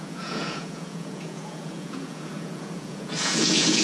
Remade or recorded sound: remade